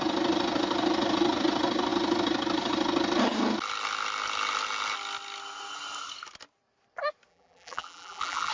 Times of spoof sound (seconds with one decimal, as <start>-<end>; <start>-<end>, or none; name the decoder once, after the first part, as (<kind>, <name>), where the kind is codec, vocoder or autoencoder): 7.3-8.5 (vocoder, BigVGAN v2)